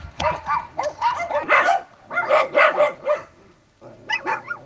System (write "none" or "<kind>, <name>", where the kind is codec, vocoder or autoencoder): none